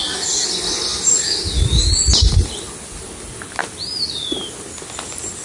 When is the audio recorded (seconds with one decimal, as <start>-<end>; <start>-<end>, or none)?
0.0-5.4